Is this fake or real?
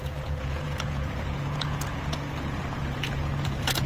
fake